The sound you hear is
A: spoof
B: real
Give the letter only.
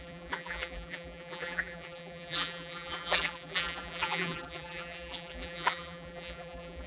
A